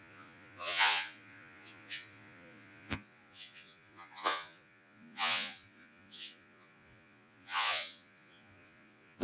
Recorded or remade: remade